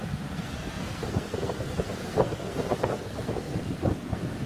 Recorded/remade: remade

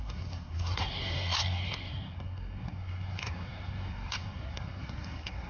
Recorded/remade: remade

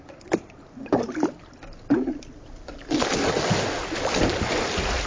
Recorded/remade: recorded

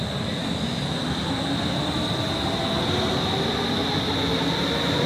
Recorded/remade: recorded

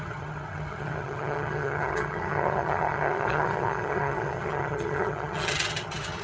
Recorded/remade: remade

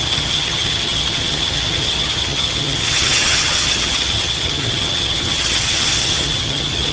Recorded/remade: remade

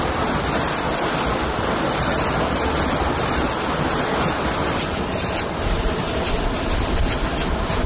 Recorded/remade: remade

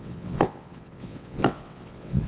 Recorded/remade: remade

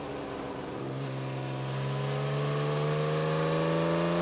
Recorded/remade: recorded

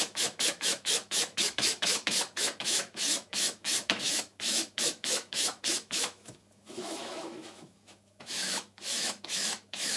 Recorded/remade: remade